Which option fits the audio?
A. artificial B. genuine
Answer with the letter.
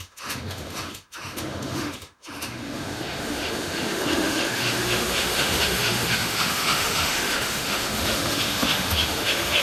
A